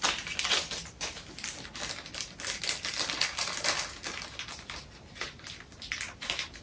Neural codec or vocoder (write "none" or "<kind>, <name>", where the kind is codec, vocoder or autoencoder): none